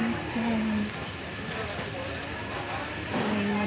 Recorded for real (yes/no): yes